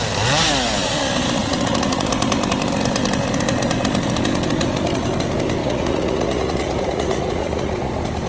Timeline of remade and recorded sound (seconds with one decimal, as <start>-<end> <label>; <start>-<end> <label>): 0.0-1.4 recorded; 1.4-2.1 remade; 2.1-5.6 recorded; 5.6-7.9 remade; 7.9-8.3 recorded